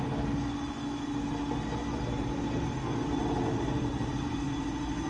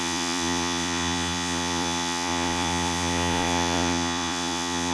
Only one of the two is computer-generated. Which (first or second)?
second